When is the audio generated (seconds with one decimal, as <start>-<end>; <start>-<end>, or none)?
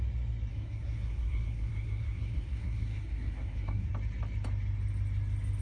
0.5-3.9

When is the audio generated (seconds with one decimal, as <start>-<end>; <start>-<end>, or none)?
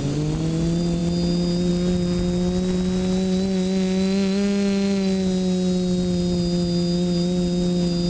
none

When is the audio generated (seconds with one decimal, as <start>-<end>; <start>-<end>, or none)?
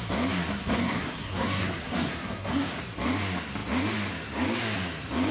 0.6-2.8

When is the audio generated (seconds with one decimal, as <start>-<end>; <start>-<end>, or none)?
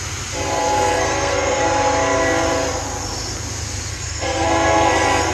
0.6-1.6; 3.9-5.3